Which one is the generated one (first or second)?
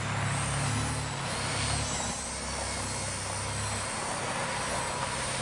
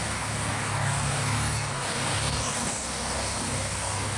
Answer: second